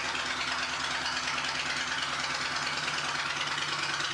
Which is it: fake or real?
real